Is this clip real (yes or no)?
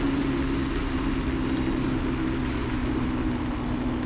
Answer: yes